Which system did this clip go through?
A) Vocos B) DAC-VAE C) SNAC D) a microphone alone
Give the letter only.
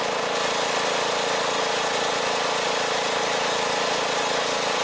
D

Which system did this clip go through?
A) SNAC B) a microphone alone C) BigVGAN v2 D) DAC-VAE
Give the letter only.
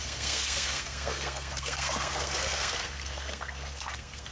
A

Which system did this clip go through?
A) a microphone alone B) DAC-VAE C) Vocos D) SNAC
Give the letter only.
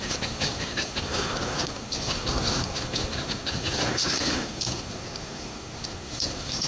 D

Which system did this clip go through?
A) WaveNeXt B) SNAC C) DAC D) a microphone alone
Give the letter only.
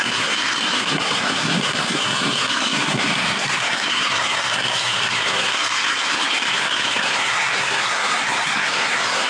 B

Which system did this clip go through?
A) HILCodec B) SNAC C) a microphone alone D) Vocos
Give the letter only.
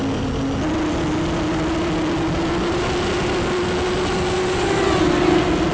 C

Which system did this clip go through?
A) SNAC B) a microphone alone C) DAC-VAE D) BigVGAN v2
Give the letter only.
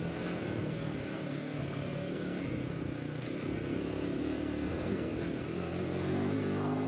A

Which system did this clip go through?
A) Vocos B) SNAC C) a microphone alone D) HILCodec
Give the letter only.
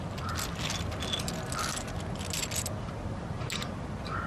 C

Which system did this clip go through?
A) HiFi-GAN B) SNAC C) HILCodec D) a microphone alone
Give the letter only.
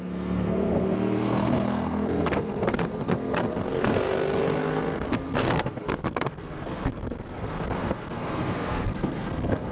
B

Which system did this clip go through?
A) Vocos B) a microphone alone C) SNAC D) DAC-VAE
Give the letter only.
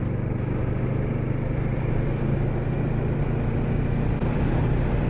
B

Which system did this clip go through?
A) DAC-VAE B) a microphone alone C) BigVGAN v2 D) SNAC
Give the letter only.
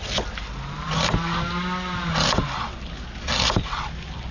B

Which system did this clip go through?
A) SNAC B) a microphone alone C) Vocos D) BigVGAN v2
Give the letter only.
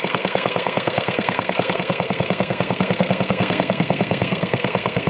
A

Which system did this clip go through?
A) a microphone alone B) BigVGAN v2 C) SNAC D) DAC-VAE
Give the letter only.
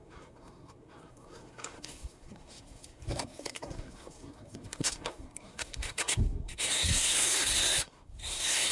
C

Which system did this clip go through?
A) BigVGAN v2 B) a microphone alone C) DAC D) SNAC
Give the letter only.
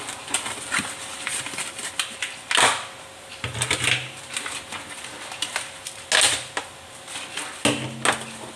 B